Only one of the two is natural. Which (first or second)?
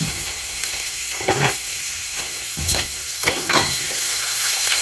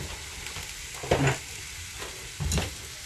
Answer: second